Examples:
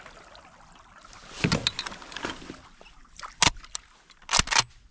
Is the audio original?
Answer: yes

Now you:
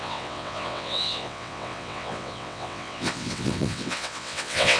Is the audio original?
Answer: no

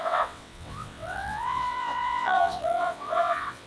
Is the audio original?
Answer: no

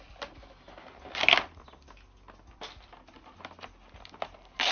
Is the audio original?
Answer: yes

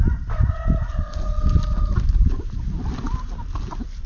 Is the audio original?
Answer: yes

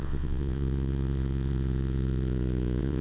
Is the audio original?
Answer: no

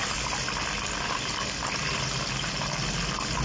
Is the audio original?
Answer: yes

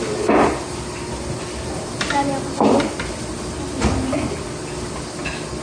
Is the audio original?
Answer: yes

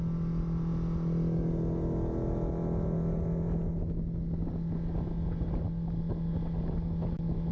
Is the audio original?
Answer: yes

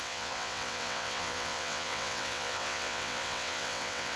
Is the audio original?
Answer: no